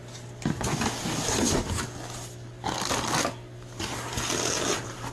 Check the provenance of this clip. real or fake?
real